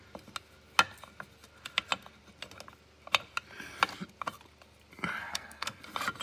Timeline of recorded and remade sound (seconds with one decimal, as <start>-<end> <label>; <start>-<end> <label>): 0.0-5.2 recorded; 5.2-5.8 remade; 5.8-6.2 recorded